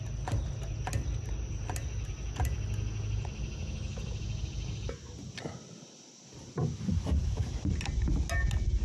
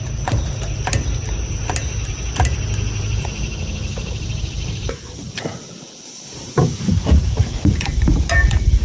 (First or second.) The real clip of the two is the first